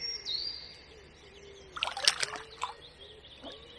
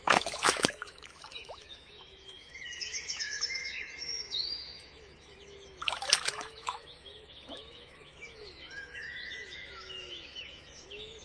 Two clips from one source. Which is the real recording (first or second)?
first